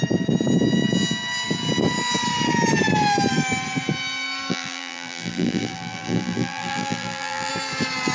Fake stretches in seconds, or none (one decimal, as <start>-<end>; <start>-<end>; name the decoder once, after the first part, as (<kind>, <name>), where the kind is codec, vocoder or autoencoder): 4.5-7.5 (vocoder, BigVGAN v2)